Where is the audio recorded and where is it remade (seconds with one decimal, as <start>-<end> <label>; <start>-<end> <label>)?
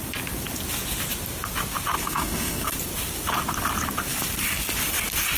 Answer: 0.0-2.0 recorded; 2.0-2.7 remade; 2.7-5.4 recorded